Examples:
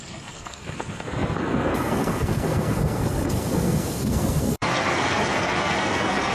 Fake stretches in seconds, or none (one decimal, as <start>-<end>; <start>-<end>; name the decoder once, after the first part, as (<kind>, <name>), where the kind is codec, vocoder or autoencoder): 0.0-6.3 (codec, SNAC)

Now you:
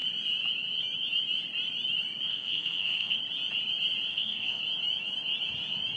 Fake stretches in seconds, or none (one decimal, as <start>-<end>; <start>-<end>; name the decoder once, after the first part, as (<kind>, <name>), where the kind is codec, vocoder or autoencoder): 2.3-3.2 (codec, SNAC); 4.1-4.6

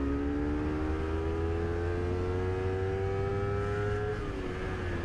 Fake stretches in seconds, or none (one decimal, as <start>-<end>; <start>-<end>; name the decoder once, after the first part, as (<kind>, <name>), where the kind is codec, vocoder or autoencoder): none

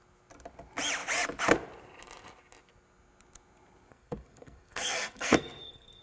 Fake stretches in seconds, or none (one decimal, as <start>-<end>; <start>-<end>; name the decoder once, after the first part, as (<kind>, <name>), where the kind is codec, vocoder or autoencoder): 3.9-6.0 (codec, SNAC)

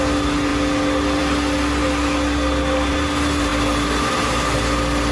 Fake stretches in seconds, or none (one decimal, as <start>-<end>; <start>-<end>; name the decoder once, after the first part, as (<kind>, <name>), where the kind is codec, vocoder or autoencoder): none

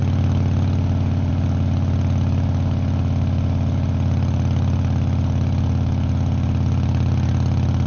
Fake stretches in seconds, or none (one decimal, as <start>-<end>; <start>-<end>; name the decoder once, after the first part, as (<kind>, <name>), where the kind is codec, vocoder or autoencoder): none

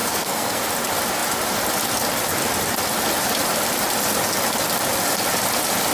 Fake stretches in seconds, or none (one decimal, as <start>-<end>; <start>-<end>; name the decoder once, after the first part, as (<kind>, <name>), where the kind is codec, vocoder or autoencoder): 0.0-0.6 (codec, SNAC)